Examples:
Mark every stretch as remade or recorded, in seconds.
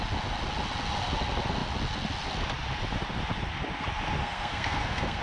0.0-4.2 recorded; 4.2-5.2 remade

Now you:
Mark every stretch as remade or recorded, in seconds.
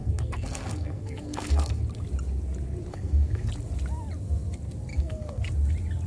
0.0-1.8 remade; 1.8-2.9 recorded; 2.9-3.5 remade; 3.5-4.9 recorded; 4.9-5.5 remade; 5.5-6.1 recorded